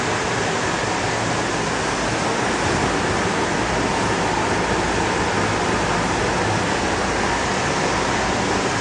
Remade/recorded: recorded